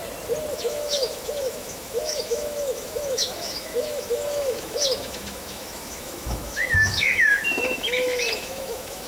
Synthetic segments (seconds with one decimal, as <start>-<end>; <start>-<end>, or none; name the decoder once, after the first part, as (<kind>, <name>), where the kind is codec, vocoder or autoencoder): 0.5-9.1 (autoencoder, DAC-VAE)